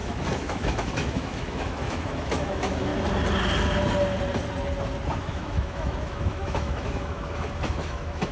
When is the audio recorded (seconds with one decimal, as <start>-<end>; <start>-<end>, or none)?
2.9-5.2